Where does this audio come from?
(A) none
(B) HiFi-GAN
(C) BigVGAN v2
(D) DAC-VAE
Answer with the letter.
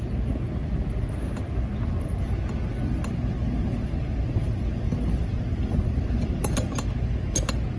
A